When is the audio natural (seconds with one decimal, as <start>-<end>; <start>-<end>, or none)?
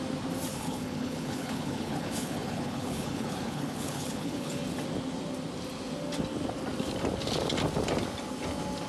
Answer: 0.0-0.5; 4.6-8.9